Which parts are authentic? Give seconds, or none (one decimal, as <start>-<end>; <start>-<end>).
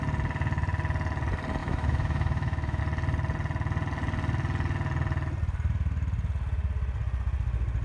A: 0.0-1.6; 2.8-7.8